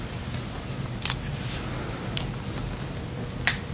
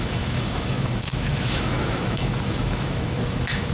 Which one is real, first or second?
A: first